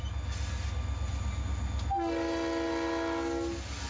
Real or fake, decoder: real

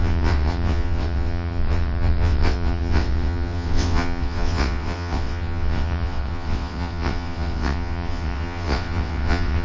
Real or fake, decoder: fake, vocoder, WaveNeXt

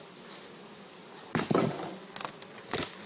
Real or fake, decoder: real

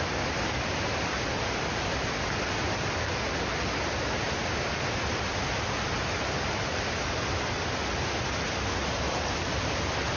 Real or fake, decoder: real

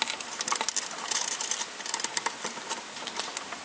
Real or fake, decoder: real